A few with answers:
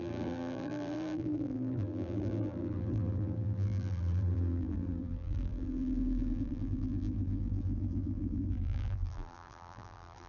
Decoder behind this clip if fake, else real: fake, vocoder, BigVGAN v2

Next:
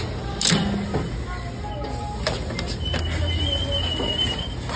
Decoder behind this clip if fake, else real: real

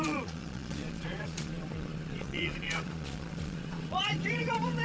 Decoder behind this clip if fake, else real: fake, vocoder, Vocos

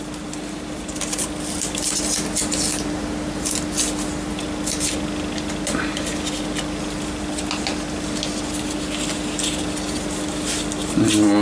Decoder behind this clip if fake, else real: real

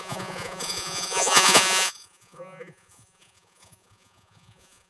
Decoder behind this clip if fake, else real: fake, vocoder, Vocos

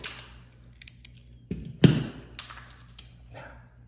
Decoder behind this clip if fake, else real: real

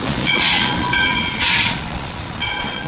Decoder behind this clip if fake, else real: fake, vocoder, Vocos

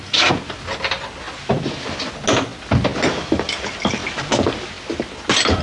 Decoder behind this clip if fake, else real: real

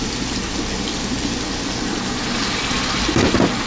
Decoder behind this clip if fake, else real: real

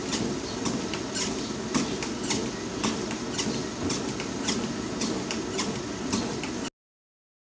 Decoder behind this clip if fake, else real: real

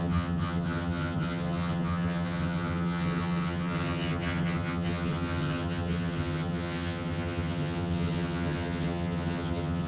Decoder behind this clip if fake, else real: fake, vocoder, HiFi-GAN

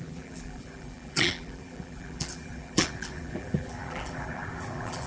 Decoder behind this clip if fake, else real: fake, vocoder, BigVGAN v2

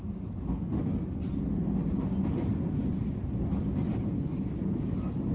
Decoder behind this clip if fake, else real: real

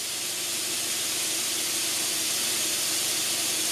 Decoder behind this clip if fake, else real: real